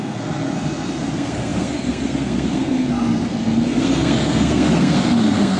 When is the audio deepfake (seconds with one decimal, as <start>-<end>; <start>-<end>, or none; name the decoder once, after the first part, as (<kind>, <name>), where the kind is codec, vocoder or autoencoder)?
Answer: 0.0-5.6 (codec, SNAC)